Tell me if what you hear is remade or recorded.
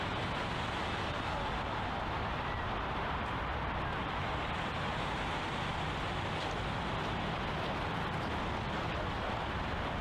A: recorded